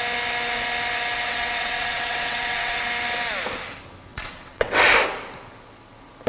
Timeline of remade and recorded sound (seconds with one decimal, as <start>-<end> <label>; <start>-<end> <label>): 0.0-1.3 recorded; 1.3-2.8 remade; 2.8-4.1 recorded; 4.1-4.8 remade; 4.8-6.3 recorded